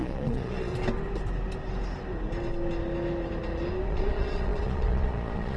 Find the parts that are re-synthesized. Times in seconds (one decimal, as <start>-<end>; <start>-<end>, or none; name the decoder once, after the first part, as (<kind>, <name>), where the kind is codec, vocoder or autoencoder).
0.0-0.7 (vocoder, Vocos); 3.9-5.6

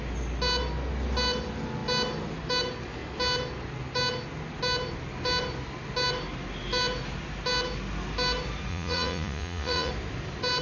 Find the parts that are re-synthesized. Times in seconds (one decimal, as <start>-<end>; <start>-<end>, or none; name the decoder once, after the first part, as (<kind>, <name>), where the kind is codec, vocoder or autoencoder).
8.7-9.9 (vocoder, Vocos)

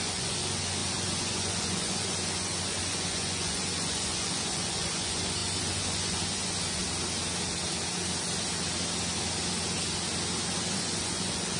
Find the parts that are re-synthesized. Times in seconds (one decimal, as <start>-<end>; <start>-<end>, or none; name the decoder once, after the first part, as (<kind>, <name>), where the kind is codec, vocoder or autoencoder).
0.0-6.8 (vocoder, Vocos); 10.7-11.6

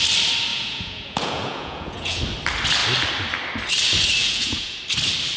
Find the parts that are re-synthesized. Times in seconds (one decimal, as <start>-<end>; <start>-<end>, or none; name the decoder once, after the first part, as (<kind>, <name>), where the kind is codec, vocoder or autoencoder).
0.5-2.2 (vocoder, Vocos); 4.2-4.8

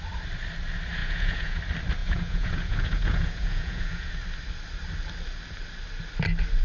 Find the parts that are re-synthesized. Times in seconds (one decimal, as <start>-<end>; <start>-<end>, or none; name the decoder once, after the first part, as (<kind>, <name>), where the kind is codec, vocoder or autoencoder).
1.0-1.6 (vocoder, Vocos); 2.0-4.1

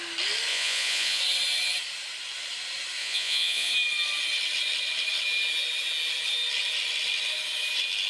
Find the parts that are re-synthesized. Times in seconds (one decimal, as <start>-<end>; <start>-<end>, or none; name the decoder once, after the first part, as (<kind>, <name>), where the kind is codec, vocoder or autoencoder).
0.5-1.2 (vocoder, Vocos); 3.0-3.7